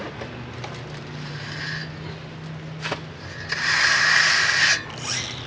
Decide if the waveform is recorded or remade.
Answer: recorded